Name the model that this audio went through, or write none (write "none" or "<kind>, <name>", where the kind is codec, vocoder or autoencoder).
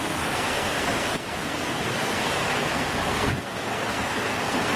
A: codec, SNAC